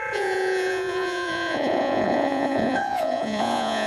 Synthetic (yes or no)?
yes